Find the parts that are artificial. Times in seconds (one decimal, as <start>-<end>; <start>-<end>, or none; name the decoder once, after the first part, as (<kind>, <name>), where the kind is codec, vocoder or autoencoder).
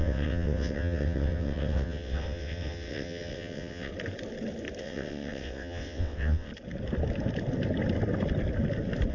0.0-3.9 (vocoder, WaveNeXt); 4.8-6.5